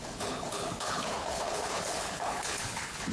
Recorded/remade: remade